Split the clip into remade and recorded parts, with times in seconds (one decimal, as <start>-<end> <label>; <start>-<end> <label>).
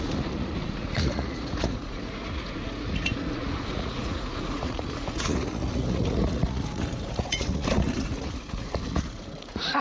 0.0-9.8 remade